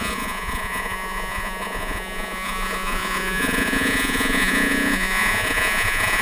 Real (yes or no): no